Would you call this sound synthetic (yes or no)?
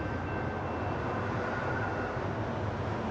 no